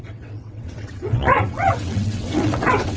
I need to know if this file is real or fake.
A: fake